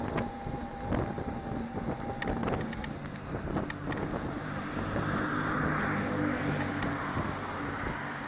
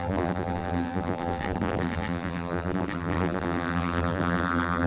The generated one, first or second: second